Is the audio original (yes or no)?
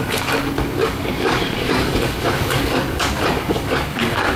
no